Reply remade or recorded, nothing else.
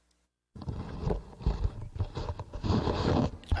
recorded